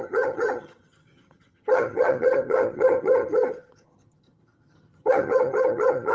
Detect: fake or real fake